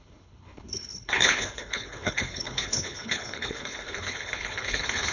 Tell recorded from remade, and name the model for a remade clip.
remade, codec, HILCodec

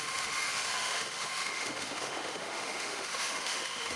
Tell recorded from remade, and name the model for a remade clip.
remade, autoencoder, DAC-VAE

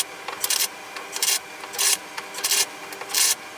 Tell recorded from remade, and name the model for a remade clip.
recorded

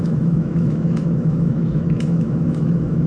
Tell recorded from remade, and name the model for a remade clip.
remade, autoencoder, DAC-VAE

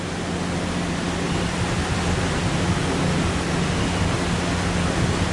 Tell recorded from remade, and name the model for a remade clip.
recorded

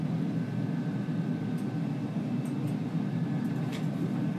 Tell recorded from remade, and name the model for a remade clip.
recorded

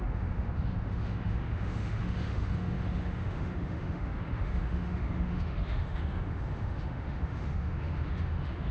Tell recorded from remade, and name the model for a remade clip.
remade, autoencoder, DAC-VAE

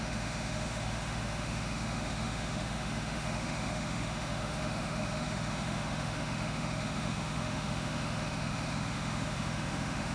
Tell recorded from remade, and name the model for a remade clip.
remade, autoencoder, DAC-VAE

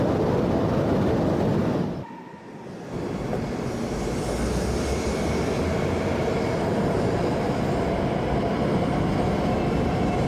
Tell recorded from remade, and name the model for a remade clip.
recorded